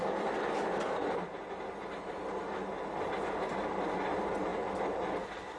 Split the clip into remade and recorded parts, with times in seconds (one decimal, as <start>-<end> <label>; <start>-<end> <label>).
0.0-5.6 recorded